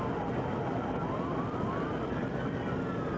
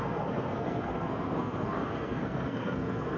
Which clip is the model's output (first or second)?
second